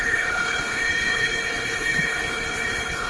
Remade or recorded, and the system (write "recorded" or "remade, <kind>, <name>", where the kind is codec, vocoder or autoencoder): remade, codec, HILCodec